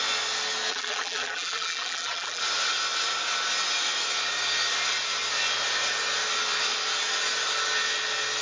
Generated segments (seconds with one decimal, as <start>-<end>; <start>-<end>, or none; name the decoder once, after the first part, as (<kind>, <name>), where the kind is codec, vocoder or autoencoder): 0.7-2.4 (vocoder, BigVGAN v2)